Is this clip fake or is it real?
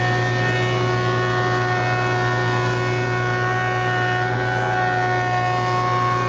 real